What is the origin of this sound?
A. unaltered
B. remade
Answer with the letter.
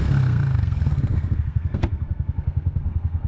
B